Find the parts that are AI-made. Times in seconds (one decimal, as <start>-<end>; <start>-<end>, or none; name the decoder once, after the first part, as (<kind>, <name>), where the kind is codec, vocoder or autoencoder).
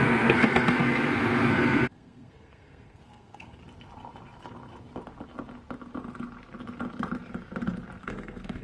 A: 0.0-3.6 (codec, SNAC); 8.0-8.6